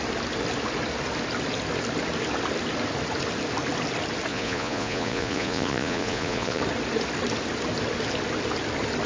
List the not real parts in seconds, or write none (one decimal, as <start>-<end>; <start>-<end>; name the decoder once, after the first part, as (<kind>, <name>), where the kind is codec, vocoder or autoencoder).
4.3-6.6 (vocoder, Vocos)